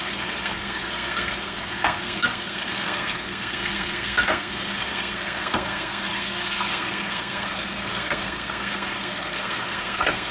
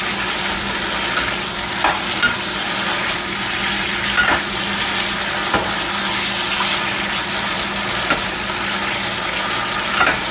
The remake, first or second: first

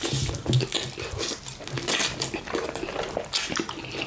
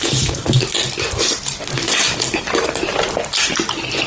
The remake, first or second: second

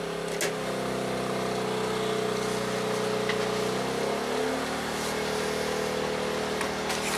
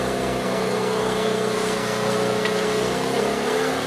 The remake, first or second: second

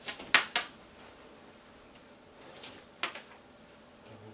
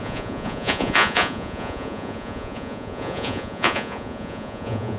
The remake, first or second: second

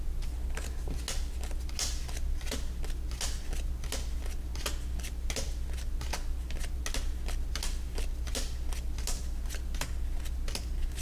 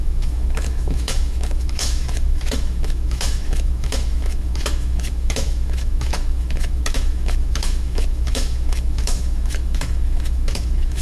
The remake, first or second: second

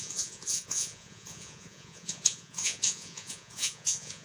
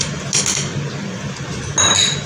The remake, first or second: first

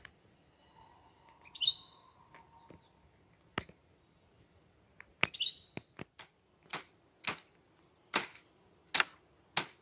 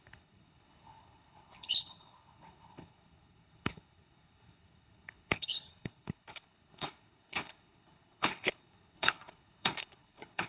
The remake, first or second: second